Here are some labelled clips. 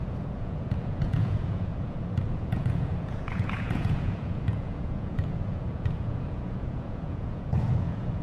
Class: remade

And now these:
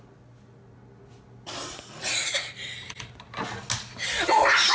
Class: recorded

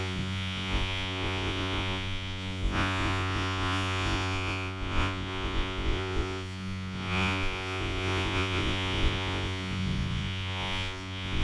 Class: remade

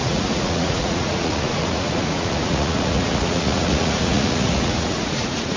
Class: remade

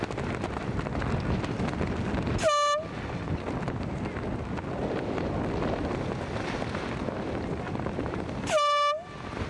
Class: recorded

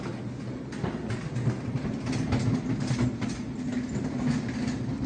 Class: recorded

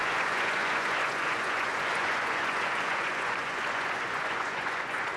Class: remade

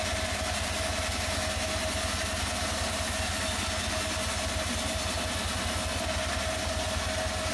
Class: recorded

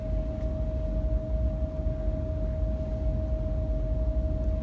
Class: recorded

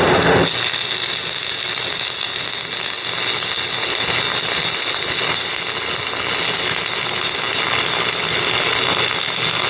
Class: recorded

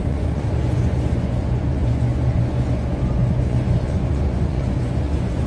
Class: remade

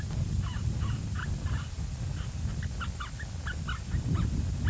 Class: recorded